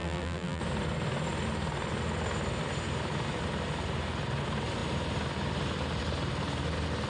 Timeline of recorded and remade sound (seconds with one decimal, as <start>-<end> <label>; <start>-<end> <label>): 0.0-0.6 remade; 0.6-7.1 recorded